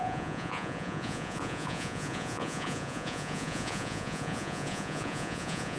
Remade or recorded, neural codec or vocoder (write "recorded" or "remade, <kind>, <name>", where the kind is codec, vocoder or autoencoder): remade, vocoder, Vocos